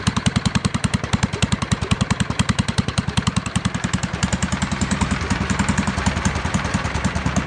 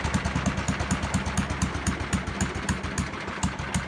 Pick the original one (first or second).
second